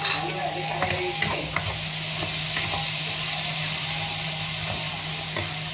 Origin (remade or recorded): recorded